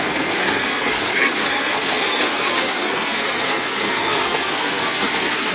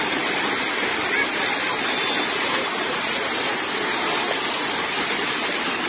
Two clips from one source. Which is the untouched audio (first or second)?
second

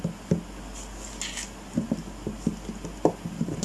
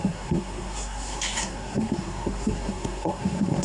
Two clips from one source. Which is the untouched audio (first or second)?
first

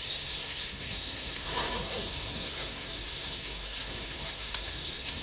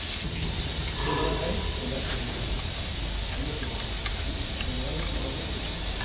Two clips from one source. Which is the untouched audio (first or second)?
second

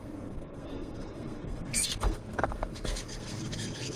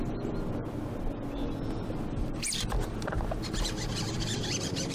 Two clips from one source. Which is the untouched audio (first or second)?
second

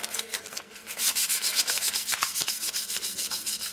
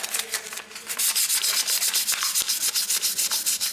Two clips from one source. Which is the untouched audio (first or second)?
second